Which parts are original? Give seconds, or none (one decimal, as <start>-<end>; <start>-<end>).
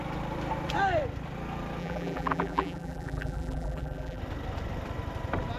0.0-1.8; 4.2-5.6